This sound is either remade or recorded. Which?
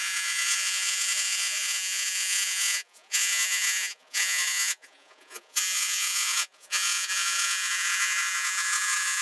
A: remade